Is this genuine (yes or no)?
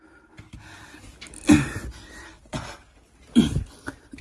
yes